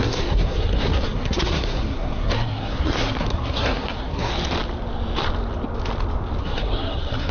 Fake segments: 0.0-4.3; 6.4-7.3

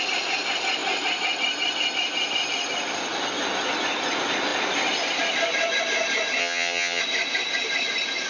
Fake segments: 6.4-7.0

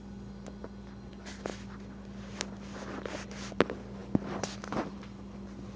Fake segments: 0.0-0.6; 1.1-5.8

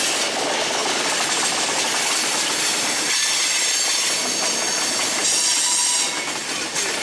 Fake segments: none